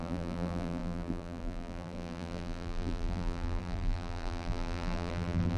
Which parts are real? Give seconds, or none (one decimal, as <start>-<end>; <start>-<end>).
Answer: none